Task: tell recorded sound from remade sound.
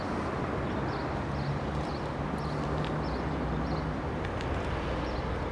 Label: recorded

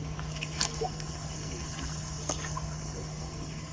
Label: remade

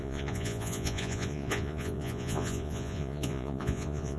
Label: remade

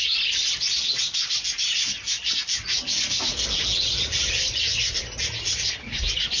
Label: recorded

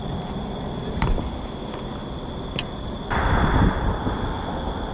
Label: recorded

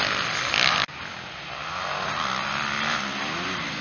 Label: recorded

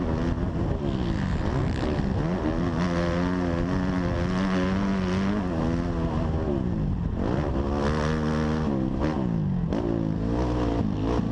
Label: recorded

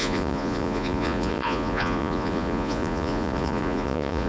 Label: remade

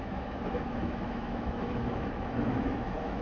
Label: remade